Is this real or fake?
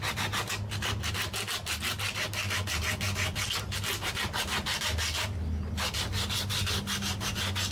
real